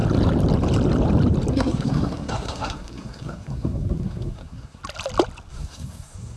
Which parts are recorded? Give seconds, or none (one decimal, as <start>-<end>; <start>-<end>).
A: 0.0-1.5; 4.8-5.5